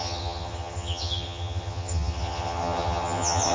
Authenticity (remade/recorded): remade